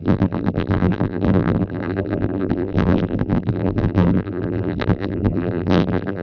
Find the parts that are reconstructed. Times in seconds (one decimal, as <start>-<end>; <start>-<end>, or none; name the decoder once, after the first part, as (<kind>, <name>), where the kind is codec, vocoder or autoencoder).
0.0-6.2 (vocoder, BigVGAN v2)